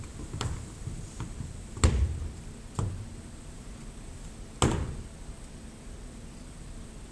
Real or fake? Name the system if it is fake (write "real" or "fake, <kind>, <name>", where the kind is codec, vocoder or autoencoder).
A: real